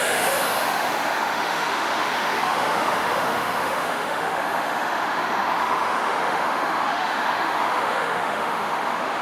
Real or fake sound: fake